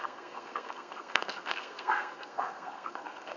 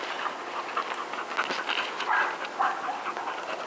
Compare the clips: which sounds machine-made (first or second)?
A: first